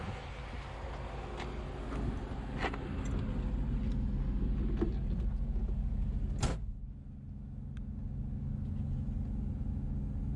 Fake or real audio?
real